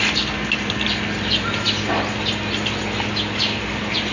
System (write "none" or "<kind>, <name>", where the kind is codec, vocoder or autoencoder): none